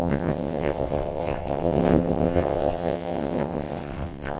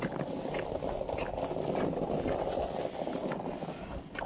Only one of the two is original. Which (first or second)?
second